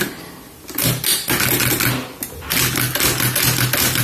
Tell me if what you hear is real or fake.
real